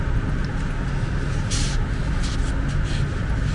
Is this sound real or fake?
real